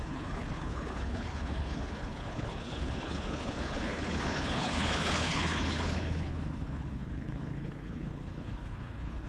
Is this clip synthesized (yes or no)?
yes